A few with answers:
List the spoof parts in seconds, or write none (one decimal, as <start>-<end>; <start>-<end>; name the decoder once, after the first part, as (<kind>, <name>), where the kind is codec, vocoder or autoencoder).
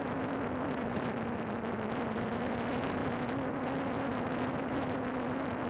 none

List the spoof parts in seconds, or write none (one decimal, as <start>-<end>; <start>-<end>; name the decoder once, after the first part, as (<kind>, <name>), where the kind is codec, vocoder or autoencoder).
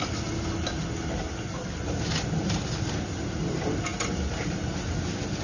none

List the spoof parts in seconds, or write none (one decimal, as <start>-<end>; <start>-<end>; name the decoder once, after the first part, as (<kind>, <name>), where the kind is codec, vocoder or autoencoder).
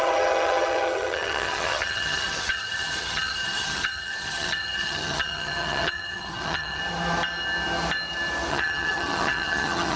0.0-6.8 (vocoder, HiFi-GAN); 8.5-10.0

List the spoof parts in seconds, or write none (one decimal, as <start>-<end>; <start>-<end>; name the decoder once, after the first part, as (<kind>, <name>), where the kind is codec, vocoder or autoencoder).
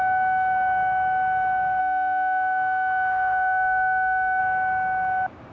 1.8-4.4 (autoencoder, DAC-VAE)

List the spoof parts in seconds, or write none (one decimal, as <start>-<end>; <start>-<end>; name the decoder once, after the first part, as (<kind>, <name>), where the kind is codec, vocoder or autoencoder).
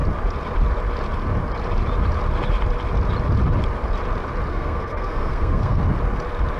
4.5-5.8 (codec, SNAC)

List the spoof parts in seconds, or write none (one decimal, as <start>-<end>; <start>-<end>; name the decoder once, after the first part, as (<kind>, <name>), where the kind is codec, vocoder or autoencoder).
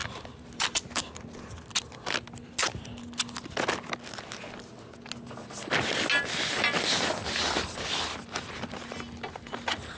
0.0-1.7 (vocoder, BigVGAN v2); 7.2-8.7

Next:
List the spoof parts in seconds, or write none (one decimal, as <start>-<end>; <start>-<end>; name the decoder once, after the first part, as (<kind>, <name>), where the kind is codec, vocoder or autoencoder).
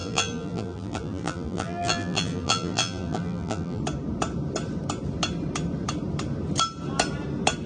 0.0-3.8 (vocoder, BigVGAN v2)